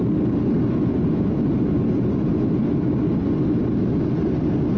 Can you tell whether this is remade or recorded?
recorded